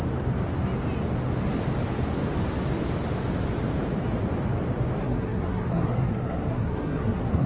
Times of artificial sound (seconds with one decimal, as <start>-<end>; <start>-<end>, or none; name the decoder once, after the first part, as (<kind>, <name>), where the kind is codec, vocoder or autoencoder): 5.0-7.5 (codec, SNAC)